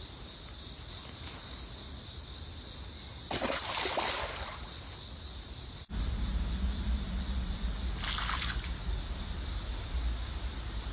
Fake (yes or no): no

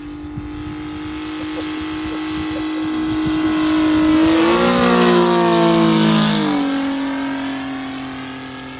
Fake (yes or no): no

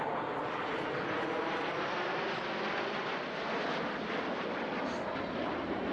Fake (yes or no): no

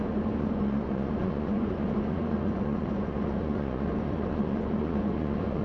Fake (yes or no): yes